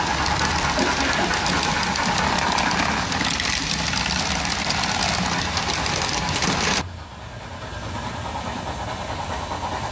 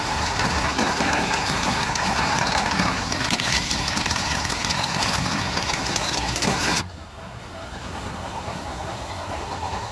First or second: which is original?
first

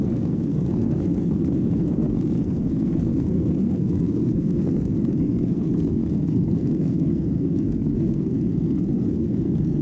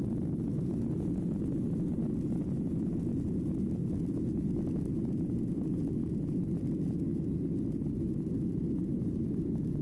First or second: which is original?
second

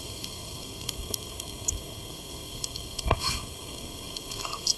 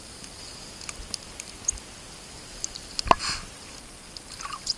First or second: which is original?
second